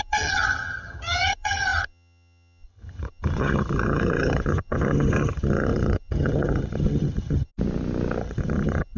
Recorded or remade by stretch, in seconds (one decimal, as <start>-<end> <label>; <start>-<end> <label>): 0.0-7.5 remade; 7.5-8.2 recorded; 8.2-9.0 remade